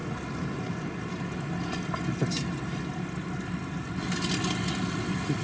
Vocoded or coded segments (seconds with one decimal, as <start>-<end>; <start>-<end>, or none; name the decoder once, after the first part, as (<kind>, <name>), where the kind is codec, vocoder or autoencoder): none

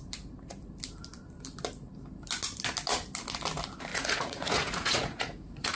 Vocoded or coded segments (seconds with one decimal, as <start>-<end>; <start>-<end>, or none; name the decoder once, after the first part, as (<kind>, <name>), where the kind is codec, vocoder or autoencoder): 3.9-5.8 (vocoder, Vocos)

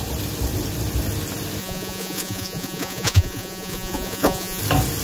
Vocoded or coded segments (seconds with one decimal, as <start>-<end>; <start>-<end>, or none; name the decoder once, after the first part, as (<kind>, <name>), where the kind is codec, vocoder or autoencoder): 1.6-4.6 (vocoder, Vocos)

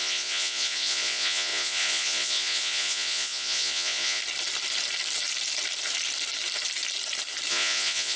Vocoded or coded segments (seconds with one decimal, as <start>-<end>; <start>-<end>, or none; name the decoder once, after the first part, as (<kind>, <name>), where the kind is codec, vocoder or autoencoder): 0.0-4.2 (vocoder, Vocos); 7.5-8.2

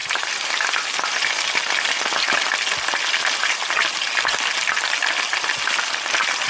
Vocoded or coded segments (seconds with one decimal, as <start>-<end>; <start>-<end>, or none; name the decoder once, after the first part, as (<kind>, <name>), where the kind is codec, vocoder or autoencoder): none

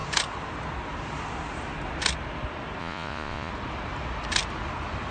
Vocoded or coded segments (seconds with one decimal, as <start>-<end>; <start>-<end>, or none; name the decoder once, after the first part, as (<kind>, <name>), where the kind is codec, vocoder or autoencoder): 2.8-3.5 (vocoder, Vocos)

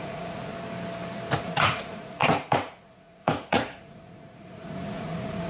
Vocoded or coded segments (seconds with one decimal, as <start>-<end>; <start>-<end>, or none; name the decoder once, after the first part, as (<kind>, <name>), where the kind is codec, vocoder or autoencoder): 0.0-0.5 (vocoder, Vocos); 1.4-5.5

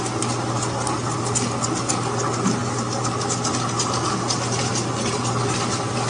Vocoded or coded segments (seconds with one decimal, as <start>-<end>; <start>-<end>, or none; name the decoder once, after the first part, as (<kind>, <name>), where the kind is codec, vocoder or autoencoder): none